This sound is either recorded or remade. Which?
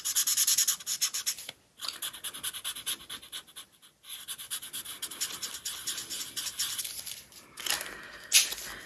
recorded